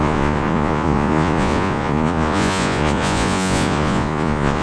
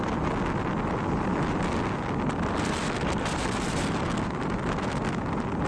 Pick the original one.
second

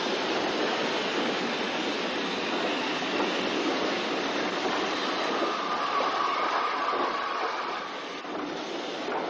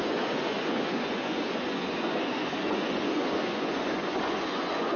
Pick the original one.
first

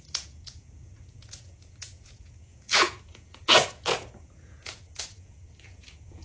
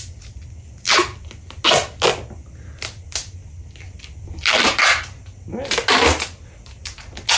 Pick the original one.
second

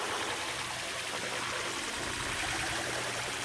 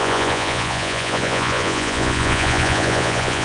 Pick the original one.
first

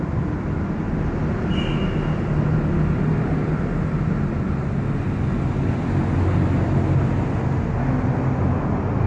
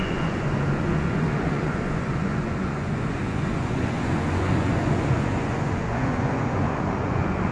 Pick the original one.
first